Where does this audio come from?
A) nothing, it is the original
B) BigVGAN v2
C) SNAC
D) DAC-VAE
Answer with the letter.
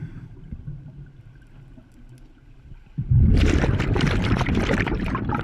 A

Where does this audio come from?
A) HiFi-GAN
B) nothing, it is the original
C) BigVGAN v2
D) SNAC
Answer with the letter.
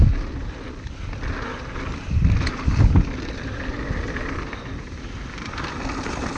B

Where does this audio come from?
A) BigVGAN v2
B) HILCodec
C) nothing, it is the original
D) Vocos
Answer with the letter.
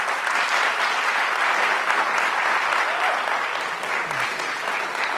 C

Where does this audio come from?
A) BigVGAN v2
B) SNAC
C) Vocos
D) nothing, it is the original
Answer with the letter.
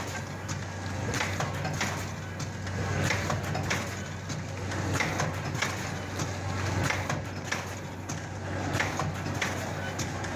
D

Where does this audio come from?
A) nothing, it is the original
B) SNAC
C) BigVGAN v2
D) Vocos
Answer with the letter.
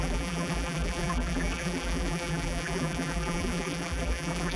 C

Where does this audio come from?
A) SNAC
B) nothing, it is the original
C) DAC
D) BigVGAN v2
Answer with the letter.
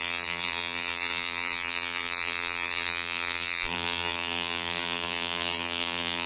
D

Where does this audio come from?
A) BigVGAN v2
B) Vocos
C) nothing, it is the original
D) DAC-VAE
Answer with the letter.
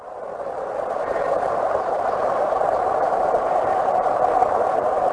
A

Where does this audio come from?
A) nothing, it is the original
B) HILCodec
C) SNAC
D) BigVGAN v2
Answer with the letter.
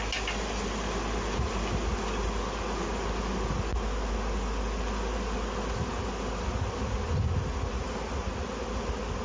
A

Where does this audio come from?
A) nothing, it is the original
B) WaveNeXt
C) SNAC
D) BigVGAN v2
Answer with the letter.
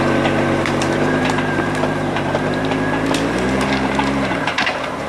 D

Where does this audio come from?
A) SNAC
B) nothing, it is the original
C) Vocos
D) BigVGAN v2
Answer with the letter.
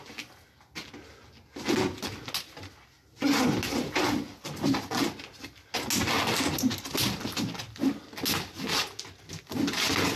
B